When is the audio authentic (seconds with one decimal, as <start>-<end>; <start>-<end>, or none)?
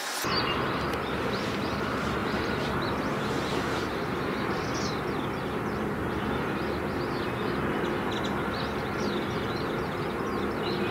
0.0-2.2; 3.0-3.5; 4.6-10.9